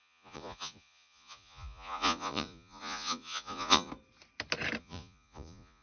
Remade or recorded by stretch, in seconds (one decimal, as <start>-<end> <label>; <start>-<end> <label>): 0.0-3.9 remade; 3.9-4.8 recorded; 4.8-5.8 remade